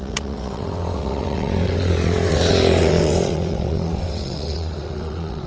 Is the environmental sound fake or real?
fake